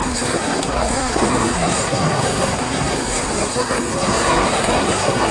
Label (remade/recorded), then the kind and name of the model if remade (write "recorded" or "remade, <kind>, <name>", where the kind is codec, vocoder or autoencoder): remade, codec, SNAC